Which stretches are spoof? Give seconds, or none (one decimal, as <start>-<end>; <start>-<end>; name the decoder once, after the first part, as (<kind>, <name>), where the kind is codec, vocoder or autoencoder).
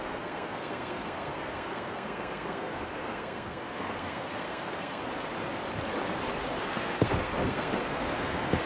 0.0-5.0 (codec, SNAC); 6.6-8.7